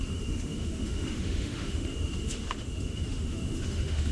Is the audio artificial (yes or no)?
yes